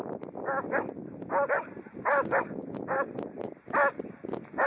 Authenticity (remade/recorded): recorded